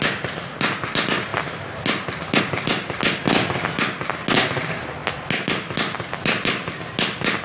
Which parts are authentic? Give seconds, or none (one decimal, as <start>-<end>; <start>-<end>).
0.0-7.4